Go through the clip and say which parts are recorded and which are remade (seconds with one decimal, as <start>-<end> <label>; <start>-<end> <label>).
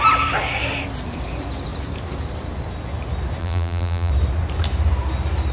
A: 0.0-3.4 recorded; 3.4-4.1 remade; 4.1-5.5 recorded